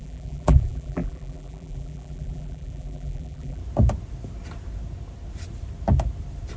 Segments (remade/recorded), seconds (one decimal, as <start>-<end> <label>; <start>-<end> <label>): 0.0-3.6 remade; 3.6-6.6 recorded